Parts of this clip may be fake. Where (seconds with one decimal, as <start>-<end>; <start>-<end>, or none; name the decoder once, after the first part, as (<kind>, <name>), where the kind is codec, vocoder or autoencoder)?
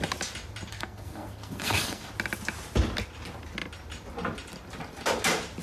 0.7-2.1 (codec, SNAC)